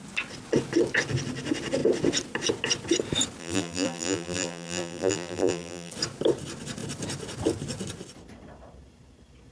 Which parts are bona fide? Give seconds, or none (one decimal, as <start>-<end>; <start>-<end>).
0.0-3.4; 5.9-9.5